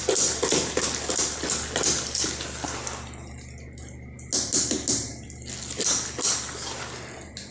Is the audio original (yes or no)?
yes